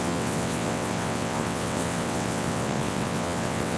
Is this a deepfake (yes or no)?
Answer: yes